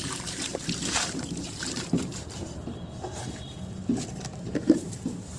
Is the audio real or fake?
fake